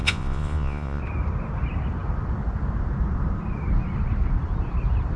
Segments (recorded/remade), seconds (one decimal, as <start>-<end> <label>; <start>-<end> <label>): 0.0-1.0 remade; 1.0-5.2 recorded